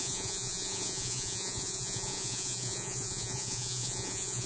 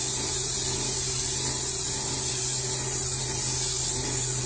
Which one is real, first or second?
second